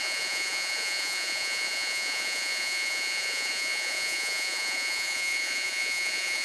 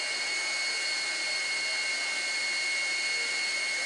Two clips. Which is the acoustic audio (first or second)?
second